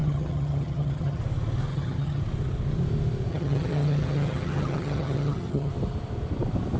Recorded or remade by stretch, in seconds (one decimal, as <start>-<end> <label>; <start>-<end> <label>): 0.0-1.2 remade; 1.2-1.7 recorded; 1.7-2.2 remade; 2.2-3.3 recorded; 3.3-5.7 remade; 5.7-6.8 recorded